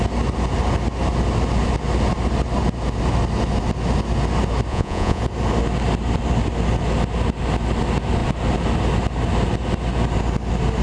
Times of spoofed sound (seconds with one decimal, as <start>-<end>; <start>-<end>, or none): 4.7-5.2